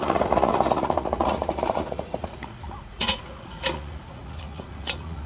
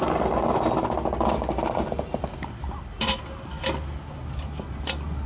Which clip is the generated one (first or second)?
first